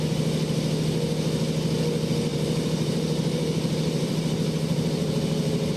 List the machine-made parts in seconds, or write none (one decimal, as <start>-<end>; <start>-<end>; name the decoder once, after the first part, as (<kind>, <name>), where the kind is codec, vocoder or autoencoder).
2.3-5.8 (vocoder, BigVGAN v2)